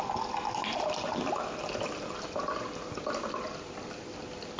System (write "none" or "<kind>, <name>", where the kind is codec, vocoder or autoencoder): none